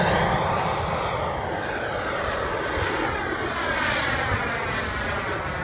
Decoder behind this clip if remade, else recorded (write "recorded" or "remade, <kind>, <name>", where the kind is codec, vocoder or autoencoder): recorded